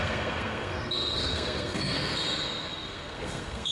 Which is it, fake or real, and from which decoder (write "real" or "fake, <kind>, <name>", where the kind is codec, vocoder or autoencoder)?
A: fake, codec, SNAC